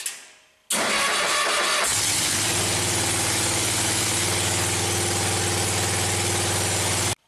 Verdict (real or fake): real